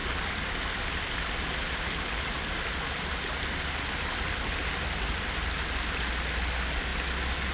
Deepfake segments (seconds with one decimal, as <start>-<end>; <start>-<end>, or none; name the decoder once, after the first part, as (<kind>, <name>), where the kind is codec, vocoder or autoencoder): none